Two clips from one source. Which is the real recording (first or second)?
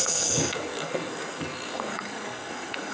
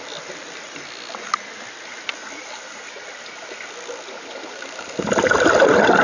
second